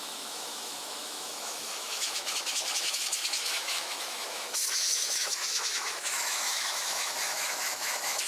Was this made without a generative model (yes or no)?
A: no